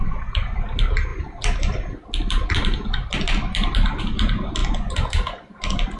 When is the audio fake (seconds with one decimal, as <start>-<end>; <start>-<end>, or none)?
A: none